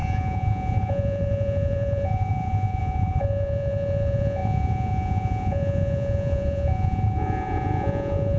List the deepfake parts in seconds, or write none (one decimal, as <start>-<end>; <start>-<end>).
0.0-8.4